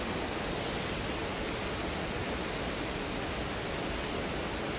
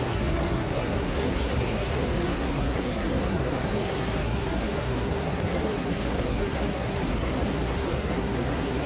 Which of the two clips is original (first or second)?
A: first